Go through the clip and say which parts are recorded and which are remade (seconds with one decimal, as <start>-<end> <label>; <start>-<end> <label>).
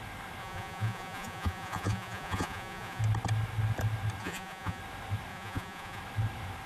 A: 0.0-0.4 recorded; 0.4-3.0 remade; 3.0-4.2 recorded; 4.2-4.8 remade; 4.8-5.3 recorded; 5.3-6.0 remade; 6.0-6.7 recorded